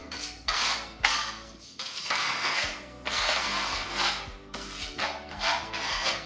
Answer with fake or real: fake